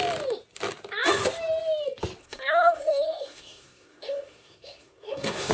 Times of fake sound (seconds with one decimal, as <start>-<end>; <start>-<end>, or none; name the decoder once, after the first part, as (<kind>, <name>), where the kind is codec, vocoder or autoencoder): 2.2-5.5 (codec, SNAC)